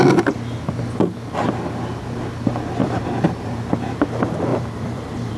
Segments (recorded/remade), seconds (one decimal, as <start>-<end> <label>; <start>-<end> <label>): 0.0-2.8 recorded; 2.8-3.7 remade; 3.7-4.5 recorded; 4.5-5.4 remade